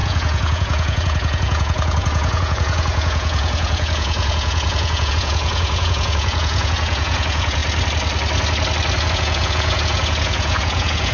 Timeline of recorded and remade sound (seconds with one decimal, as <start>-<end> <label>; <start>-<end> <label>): 0.0-7.6 remade; 7.6-9.1 recorded; 9.1-11.1 remade